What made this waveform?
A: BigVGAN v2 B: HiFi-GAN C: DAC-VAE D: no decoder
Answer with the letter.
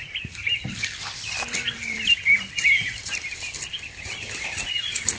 A